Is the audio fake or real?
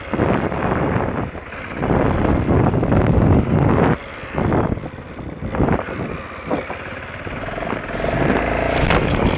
real